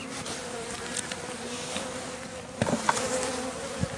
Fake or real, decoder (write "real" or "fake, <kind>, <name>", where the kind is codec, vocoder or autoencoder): real